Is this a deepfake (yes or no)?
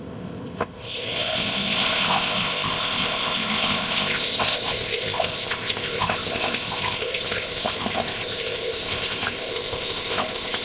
yes